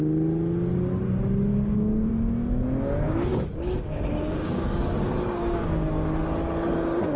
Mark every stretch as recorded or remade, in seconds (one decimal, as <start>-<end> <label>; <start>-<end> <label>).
0.0-1.5 recorded; 1.5-2.1 remade; 2.1-3.3 recorded; 3.3-6.1 remade; 6.1-7.2 recorded